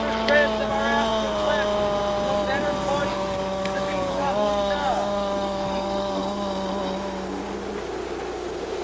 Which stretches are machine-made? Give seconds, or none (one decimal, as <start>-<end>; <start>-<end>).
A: 3.1-6.2

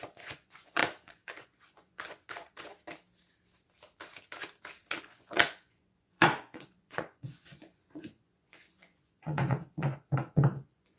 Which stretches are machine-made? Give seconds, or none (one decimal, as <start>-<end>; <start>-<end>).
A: 0.0-2.7; 5.0-11.0

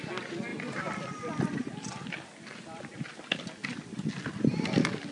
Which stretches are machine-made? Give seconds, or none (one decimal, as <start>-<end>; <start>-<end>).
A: none

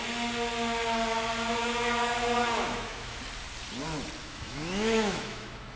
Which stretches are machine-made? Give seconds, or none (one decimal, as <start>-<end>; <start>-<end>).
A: 1.6-3.2; 4.2-5.8

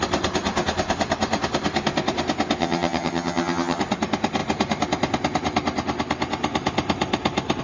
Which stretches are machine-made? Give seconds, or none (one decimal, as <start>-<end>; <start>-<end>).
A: 2.6-3.8

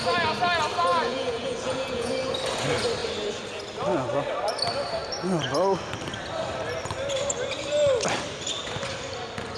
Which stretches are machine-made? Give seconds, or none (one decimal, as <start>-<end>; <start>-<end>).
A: 0.9-2.1